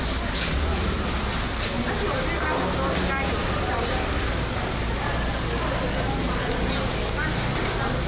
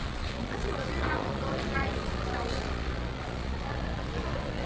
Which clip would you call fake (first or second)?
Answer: second